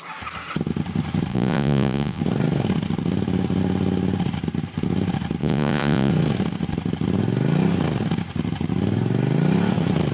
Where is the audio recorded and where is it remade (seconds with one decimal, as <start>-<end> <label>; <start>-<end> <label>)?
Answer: 0.0-1.3 recorded; 1.3-2.2 remade; 2.2-5.4 recorded; 5.4-6.1 remade; 6.1-10.1 recorded